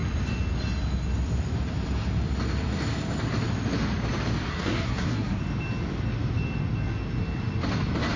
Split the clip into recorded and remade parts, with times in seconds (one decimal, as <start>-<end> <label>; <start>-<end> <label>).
0.0-4.5 recorded; 4.5-5.4 remade; 5.4-8.2 recorded